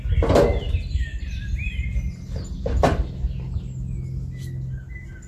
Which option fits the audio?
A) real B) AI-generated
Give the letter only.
A